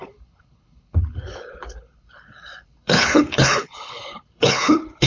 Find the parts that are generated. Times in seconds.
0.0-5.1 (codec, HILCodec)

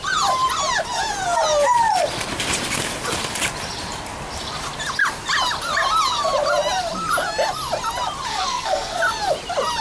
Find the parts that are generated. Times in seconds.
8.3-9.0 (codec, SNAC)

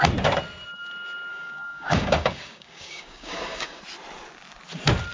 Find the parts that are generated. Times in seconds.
1.3-3.8 (codec, DAC)

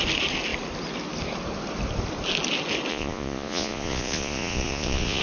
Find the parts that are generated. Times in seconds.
2.9-5.2 (vocoder, Vocos)